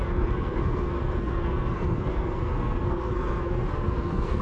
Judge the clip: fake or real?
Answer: fake